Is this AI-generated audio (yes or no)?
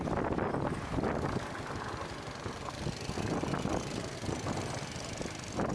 no